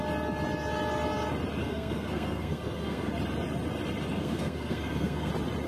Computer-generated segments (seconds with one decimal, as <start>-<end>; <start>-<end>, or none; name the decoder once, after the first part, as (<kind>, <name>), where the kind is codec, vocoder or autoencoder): 1.6-3.1 (codec, SNAC); 4.2-5.3